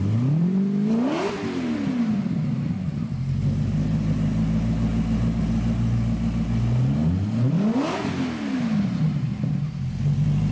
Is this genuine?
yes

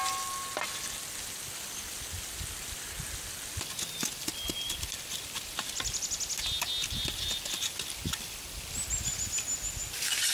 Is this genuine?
yes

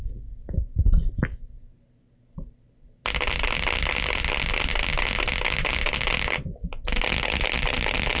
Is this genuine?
yes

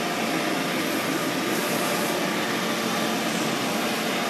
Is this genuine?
yes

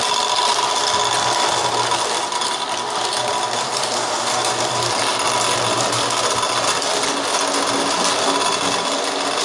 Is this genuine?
yes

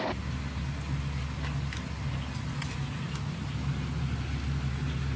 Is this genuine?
yes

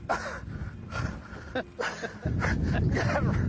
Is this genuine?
yes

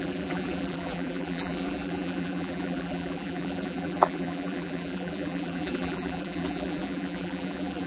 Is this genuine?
no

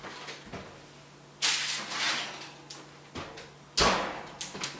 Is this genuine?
yes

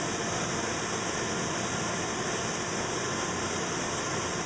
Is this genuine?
yes